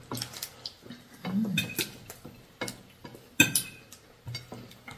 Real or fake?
real